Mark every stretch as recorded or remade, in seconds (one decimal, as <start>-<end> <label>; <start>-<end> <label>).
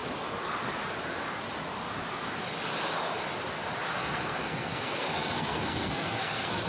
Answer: 0.0-4.0 recorded; 4.0-6.7 remade